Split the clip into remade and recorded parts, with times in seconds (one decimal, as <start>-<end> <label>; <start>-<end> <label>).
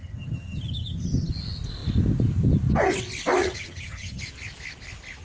0.0-1.3 remade; 1.3-3.4 recorded; 3.4-4.2 remade; 4.2-5.2 recorded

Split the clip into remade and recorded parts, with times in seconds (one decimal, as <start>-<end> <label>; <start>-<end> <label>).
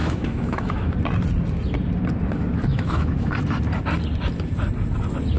0.0-0.9 remade; 0.9-2.7 recorded; 2.7-3.3 remade; 3.3-5.4 recorded